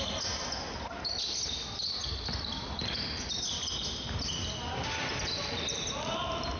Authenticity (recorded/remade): recorded